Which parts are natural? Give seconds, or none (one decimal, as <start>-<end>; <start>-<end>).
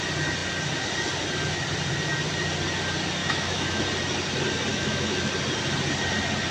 0.0-3.2; 3.8-4.7; 5.3-6.5